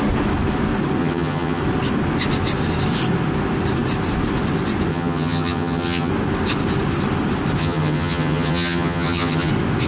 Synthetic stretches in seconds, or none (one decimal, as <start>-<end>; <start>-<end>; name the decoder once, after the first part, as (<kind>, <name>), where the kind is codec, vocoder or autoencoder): 1.0-1.6 (vocoder, HiFi-GAN); 4.9-6.1; 7.6-9.5